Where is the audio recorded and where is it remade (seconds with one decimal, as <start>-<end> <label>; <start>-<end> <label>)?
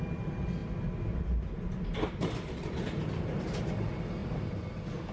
0.0-4.2 recorded; 4.2-5.1 remade